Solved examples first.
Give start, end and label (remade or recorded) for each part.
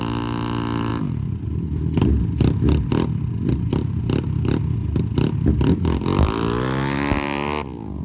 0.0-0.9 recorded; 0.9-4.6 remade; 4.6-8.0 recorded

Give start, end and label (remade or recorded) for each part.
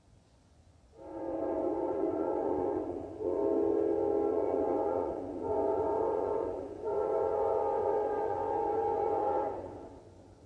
0.0-3.4 remade; 3.4-4.3 recorded; 4.3-10.5 remade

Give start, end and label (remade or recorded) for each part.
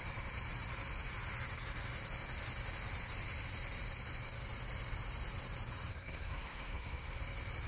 0.0-5.9 recorded; 5.9-7.2 remade; 7.2-7.7 recorded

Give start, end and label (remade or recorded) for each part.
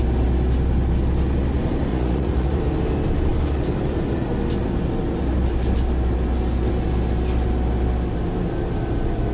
0.0-1.9 recorded; 1.9-2.6 remade; 2.6-9.3 recorded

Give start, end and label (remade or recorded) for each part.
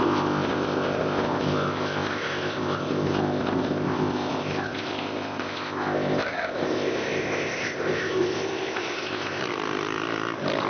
0.0-9.4 remade; 9.4-10.7 recorded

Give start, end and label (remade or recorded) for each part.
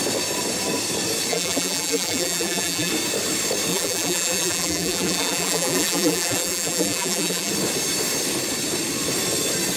0.0-1.3 recorded; 1.3-2.9 remade; 2.9-3.7 recorded; 3.7-7.5 remade; 7.5-9.8 recorded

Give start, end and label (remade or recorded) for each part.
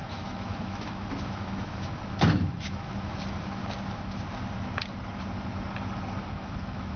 0.0-3.6 remade; 3.6-6.3 recorded; 6.3-7.0 remade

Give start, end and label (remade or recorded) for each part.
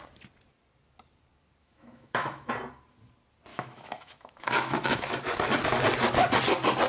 0.0-1.6 recorded; 1.6-2.5 remade; 2.5-3.5 recorded; 3.5-5.0 remade; 5.0-6.9 recorded